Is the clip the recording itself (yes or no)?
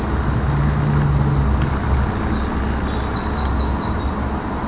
yes